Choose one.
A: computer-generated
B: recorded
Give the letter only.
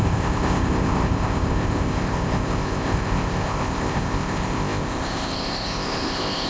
A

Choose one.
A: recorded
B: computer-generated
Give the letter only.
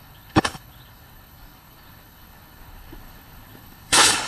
B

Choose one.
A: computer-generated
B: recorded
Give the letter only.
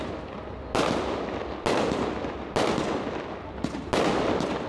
B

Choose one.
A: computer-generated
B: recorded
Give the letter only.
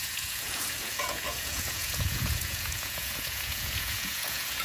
A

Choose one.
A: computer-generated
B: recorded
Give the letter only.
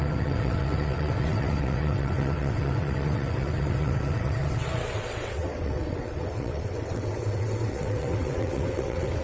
A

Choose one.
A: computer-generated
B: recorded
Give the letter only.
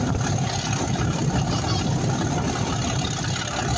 B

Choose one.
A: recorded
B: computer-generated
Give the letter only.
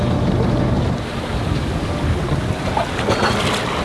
A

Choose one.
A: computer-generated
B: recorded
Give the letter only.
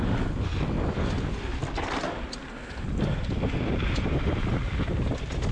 B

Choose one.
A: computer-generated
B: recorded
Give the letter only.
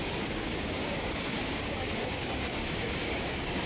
A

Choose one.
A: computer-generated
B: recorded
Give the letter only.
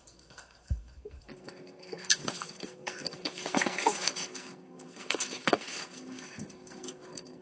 A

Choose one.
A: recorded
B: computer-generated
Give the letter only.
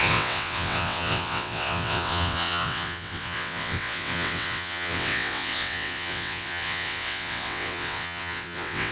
B